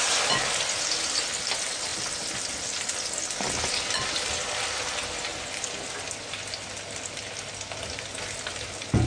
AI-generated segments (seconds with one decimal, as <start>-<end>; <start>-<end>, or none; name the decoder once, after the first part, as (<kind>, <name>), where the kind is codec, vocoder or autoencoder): none